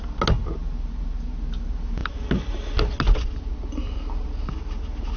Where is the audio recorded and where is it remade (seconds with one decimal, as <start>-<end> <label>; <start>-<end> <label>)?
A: 0.0-5.2 recorded